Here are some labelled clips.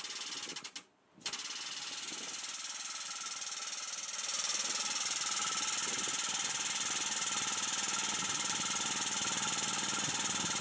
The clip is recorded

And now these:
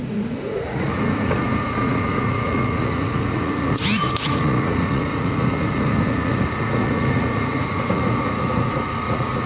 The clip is remade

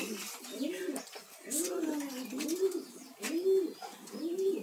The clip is recorded